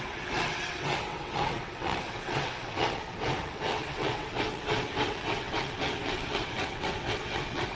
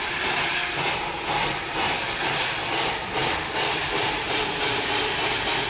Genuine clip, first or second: second